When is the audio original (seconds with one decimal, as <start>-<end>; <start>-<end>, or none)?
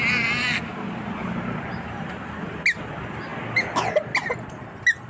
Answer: 0.0-5.1